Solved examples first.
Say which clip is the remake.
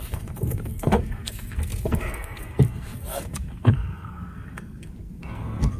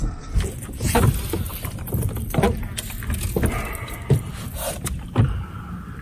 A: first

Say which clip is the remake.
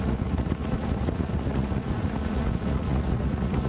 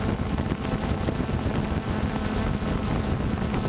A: first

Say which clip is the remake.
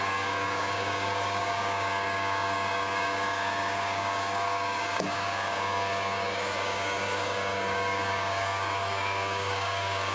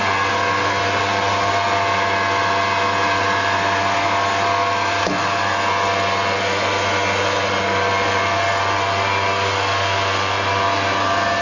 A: first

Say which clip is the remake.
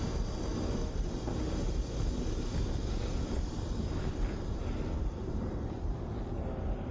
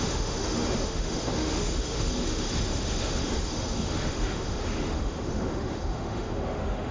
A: second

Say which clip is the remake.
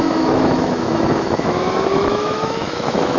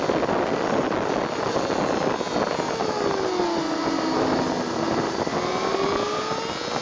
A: first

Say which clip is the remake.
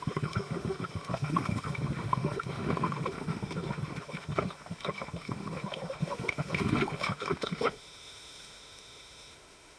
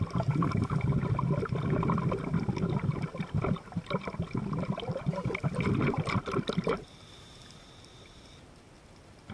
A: first